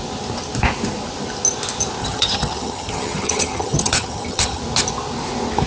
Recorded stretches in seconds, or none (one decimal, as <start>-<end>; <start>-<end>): 0.0-2.0; 4.6-5.7